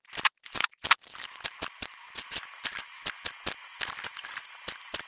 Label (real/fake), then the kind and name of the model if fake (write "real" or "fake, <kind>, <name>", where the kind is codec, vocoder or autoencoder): real